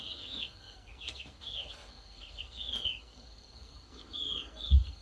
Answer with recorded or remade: remade